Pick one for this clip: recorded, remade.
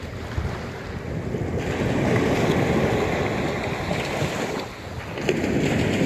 recorded